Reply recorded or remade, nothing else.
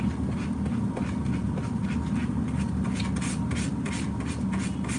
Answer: recorded